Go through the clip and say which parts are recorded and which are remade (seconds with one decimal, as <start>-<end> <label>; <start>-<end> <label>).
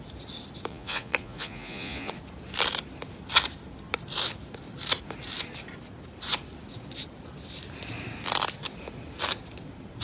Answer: 0.0-0.7 recorded; 0.7-2.1 remade; 2.1-10.0 recorded